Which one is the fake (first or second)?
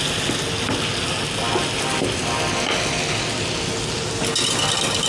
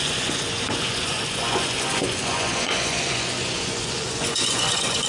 second